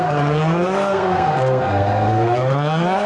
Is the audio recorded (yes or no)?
no